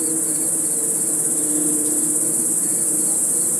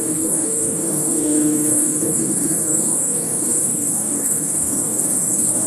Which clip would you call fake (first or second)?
second